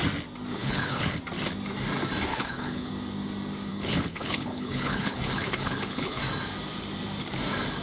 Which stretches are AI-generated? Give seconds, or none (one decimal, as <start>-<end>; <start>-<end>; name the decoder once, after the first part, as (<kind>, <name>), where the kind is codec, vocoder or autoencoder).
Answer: 0.6-1.2 (codec, HILCodec); 2.3-2.9; 3.7-6.2